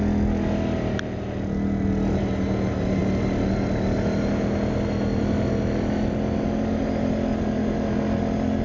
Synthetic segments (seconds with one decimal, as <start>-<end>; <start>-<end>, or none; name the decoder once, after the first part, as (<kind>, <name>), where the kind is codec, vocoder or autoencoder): none